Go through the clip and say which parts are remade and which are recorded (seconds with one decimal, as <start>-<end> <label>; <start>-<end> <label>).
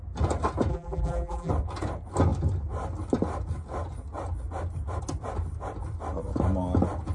0.0-0.7 recorded; 0.7-1.5 remade; 1.5-7.1 recorded